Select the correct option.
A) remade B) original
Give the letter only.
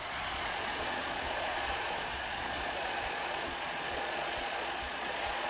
A